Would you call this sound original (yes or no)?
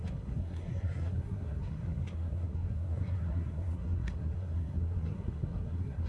no